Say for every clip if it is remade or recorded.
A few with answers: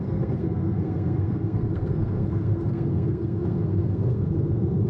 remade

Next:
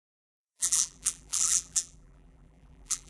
remade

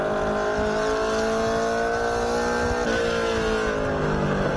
recorded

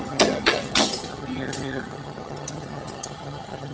remade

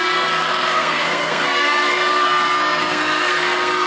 remade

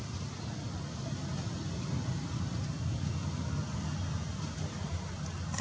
recorded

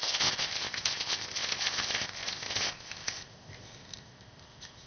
remade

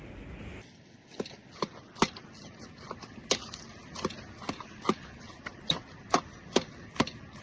recorded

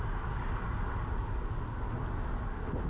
recorded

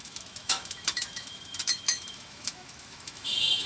remade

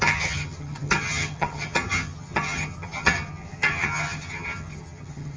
remade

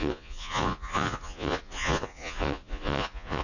remade